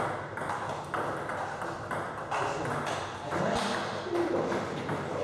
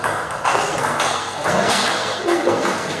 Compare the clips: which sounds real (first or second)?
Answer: first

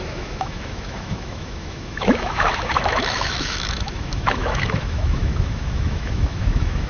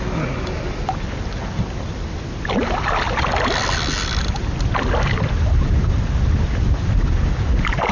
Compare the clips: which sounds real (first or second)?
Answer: second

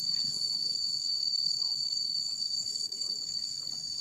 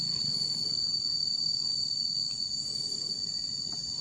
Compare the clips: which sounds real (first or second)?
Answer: second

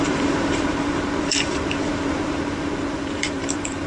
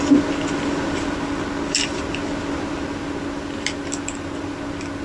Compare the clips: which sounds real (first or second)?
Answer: second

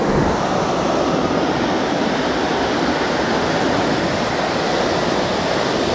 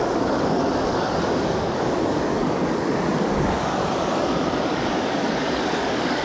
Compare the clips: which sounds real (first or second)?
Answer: first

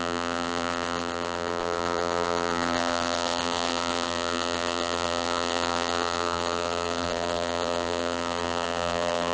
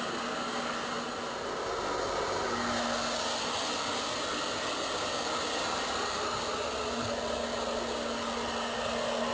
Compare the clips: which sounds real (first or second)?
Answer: second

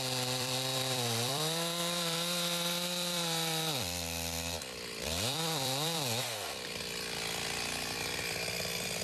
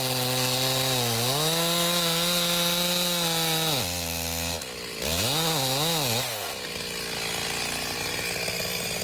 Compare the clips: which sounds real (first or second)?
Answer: second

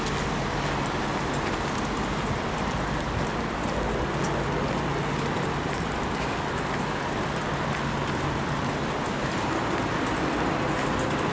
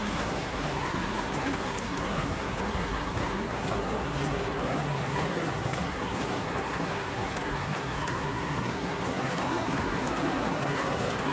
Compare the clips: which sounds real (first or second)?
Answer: first